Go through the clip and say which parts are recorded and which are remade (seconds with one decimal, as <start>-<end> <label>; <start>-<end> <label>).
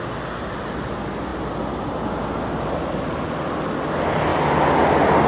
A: 0.0-5.3 recorded